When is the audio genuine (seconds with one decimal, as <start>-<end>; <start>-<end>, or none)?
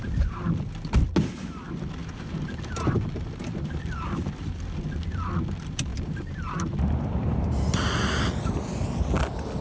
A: 0.0-2.0; 3.8-5.9; 7.7-9.6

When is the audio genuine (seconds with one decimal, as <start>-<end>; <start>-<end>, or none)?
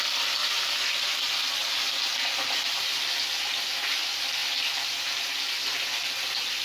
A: 0.0-0.4; 1.0-4.4; 4.9-6.6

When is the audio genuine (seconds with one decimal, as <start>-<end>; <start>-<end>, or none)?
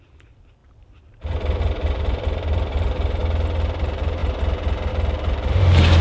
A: 3.2-3.8; 4.2-4.9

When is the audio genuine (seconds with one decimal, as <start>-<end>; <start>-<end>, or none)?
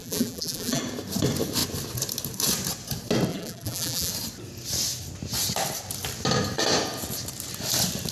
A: 0.8-3.3; 4.1-8.1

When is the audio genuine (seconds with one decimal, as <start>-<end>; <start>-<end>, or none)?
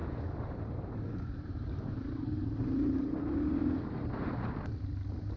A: 3.2-3.6; 4.5-5.4